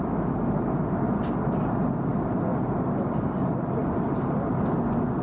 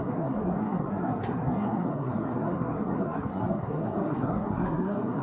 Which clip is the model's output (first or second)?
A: second